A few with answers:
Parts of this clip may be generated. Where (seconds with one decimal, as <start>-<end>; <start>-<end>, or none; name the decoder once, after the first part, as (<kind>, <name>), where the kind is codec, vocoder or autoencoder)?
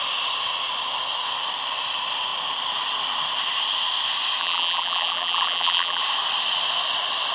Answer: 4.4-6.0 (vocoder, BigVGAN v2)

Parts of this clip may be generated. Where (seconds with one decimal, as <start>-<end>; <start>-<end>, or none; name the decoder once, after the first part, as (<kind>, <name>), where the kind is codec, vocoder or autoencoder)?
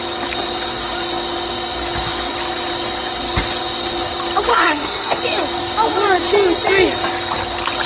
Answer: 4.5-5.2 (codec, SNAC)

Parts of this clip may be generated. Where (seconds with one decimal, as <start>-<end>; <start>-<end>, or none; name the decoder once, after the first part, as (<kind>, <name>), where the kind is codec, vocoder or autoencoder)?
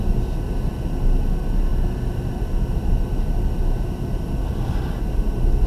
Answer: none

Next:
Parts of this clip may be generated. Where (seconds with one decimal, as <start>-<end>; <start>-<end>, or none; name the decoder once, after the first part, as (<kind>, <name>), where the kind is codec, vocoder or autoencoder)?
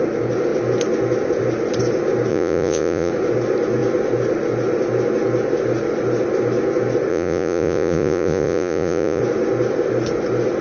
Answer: 2.3-3.1 (vocoder, Vocos); 7.1-9.2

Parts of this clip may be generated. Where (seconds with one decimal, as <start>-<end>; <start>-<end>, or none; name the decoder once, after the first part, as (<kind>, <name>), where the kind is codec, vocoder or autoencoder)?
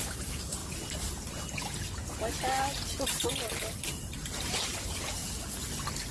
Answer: 0.0-0.6 (vocoder, BigVGAN v2); 3.3-5.2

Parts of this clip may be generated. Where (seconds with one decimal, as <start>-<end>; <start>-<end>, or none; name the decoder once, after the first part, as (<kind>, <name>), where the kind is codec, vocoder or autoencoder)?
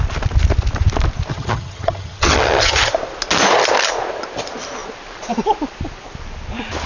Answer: 1.3-2.9 (vocoder, HiFi-GAN)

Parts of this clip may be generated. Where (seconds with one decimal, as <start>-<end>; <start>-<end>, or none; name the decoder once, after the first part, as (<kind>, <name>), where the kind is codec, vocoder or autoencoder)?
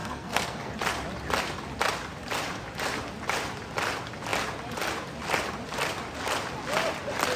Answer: 0.0-0.7 (codec, SNAC)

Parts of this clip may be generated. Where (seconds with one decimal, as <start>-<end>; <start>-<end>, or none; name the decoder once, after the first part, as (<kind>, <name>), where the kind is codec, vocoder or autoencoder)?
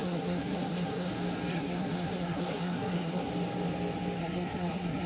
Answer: 0.0-1.1 (codec, SNAC); 1.5-3.3; 4.2-5.1